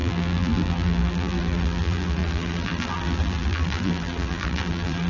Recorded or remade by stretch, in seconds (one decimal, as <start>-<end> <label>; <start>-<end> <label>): 0.0-5.1 remade